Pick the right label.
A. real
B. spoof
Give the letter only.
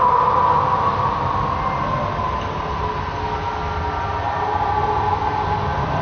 A